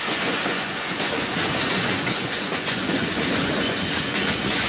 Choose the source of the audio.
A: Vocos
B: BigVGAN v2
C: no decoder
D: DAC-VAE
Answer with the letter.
A